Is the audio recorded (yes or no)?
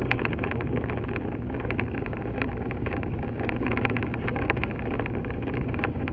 no